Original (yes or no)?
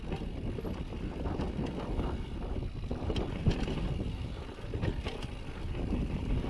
yes